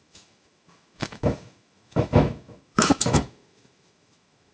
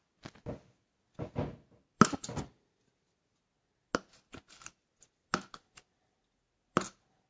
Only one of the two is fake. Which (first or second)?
first